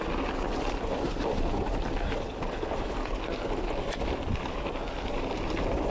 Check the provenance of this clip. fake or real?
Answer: real